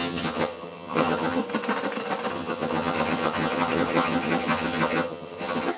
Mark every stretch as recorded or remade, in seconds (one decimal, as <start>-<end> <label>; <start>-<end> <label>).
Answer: 0.0-1.4 remade; 1.4-2.3 recorded; 2.3-5.8 remade

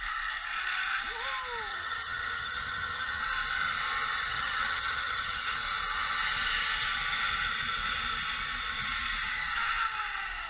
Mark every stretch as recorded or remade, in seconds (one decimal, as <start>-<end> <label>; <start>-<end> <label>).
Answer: 0.0-1.7 recorded; 1.7-3.2 remade; 3.2-4.3 recorded; 4.3-5.6 remade; 5.6-10.5 recorded

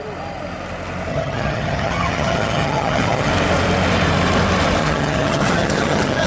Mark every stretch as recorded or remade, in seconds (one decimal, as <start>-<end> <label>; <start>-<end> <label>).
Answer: 0.0-1.1 recorded; 1.1-3.3 remade; 3.3-4.8 recorded; 4.8-6.3 remade

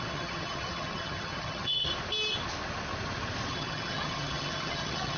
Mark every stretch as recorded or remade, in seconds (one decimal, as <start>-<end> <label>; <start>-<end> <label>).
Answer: 0.0-1.9 remade; 1.9-3.5 recorded; 3.5-5.2 remade